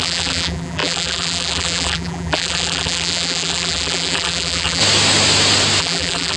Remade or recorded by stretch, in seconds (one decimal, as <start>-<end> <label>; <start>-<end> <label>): 0.0-4.8 remade; 4.8-5.8 recorded; 5.8-6.4 remade